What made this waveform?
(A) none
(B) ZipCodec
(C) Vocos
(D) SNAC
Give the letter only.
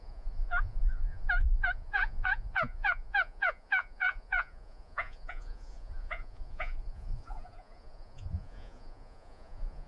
C